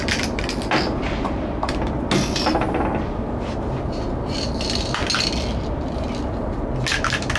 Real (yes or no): yes